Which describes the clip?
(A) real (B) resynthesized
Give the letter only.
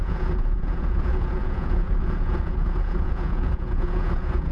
B